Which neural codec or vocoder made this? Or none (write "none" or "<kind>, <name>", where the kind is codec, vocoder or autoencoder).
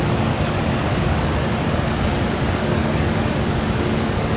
codec, DAC